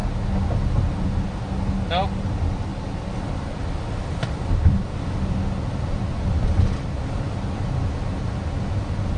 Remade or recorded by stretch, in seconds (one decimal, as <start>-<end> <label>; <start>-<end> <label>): 0.0-9.2 recorded